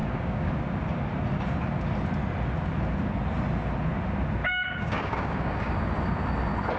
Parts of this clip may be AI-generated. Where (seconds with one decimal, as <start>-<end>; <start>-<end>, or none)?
0.0-0.5; 4.4-5.7